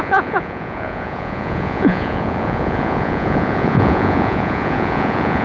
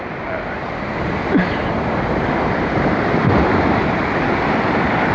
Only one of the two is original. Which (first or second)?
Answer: second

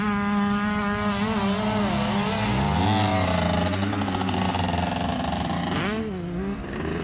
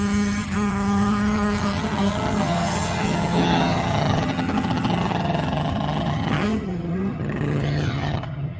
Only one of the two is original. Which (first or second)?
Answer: first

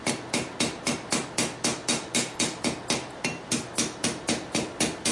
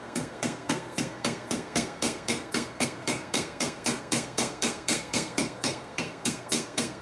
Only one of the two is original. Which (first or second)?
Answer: first